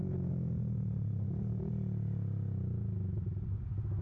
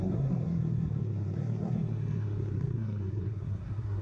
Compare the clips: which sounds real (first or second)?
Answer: first